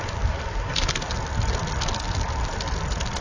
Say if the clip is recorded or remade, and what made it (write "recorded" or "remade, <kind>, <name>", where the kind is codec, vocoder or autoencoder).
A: recorded